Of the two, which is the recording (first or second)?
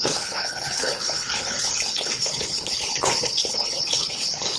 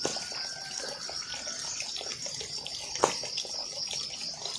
second